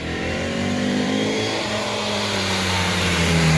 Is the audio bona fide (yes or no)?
no